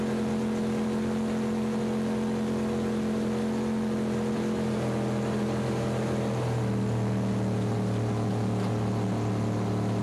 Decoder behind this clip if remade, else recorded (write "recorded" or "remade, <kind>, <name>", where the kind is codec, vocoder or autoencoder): recorded